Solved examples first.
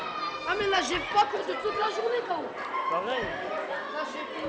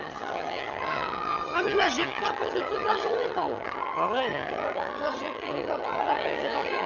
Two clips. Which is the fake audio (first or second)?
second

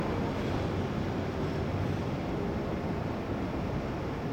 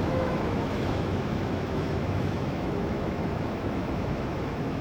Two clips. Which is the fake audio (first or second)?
second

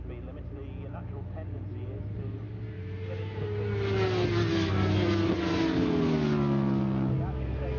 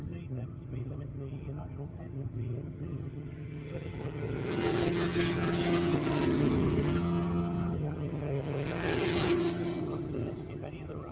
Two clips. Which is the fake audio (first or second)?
second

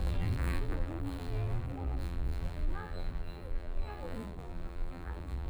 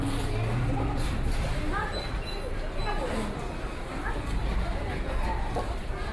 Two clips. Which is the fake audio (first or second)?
first